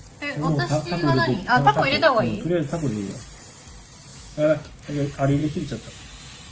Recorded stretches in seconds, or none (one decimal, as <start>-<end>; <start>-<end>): 0.0-1.0; 1.9-4.1; 4.7-5.4; 5.9-6.5

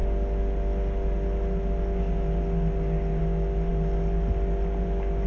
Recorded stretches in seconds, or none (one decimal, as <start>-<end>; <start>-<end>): 0.0-5.3

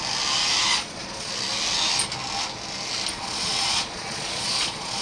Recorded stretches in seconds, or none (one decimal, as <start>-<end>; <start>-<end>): 0.0-0.7; 1.3-3.1

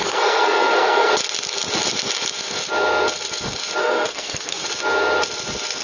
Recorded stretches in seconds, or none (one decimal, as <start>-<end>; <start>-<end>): 1.1-3.8; 4.6-5.8